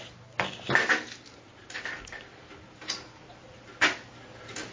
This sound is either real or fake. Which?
real